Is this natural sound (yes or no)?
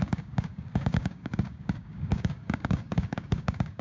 no